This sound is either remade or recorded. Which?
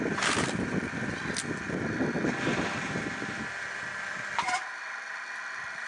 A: recorded